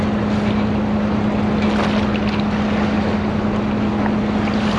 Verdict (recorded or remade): recorded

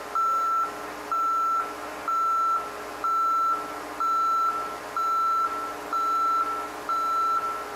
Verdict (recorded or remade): recorded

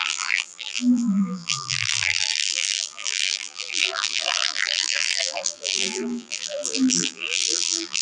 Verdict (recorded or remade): remade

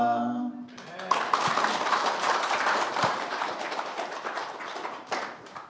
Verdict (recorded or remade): remade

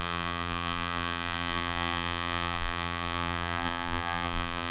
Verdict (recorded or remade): remade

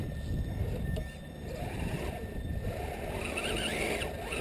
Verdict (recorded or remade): recorded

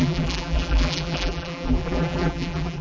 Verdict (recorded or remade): remade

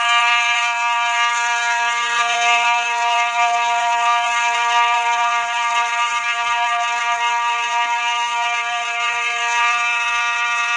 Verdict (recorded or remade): remade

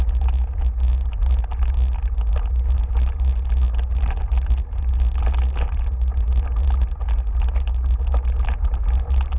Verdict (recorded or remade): recorded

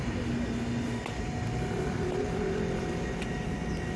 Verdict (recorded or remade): recorded